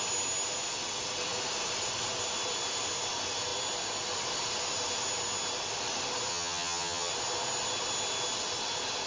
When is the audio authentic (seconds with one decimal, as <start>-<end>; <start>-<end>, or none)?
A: 0.0-6.3; 7.1-9.1